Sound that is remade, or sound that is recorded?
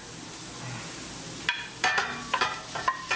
recorded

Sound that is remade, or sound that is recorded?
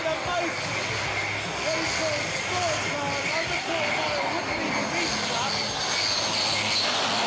recorded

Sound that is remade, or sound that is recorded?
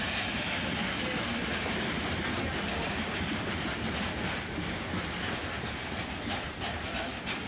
recorded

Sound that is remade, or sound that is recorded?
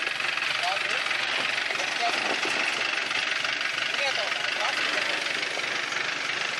recorded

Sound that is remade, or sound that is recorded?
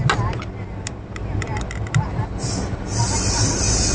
recorded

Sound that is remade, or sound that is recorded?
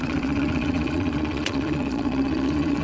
remade